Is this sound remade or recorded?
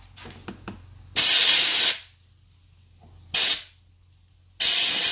recorded